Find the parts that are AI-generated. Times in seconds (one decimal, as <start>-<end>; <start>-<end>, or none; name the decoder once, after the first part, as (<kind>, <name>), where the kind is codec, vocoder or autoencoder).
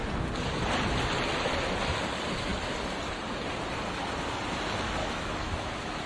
5.0-6.1 (autoencoder, DAC-VAE)